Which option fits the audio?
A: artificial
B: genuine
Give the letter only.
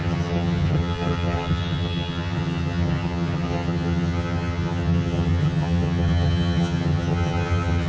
A